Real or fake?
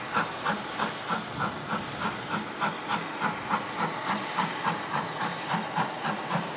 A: real